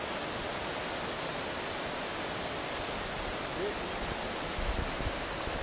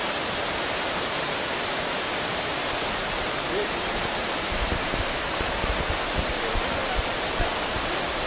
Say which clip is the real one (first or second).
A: first